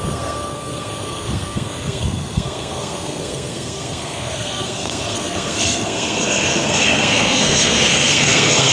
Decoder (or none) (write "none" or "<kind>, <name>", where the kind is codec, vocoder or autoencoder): codec, SNAC